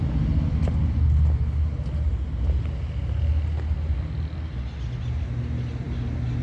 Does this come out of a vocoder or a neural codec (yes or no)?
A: no